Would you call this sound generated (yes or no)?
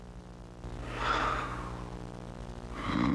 no